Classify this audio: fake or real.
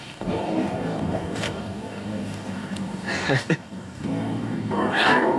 fake